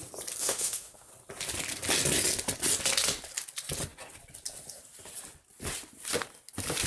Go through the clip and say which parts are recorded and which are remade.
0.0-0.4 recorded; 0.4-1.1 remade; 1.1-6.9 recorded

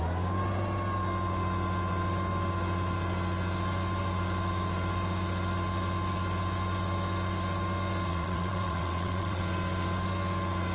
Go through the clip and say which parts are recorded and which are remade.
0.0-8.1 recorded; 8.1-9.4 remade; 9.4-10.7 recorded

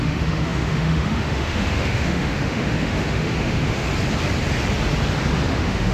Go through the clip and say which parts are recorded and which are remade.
0.0-3.9 remade; 3.9-5.5 recorded; 5.5-5.9 remade